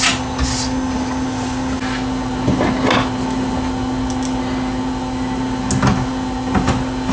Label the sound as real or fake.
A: real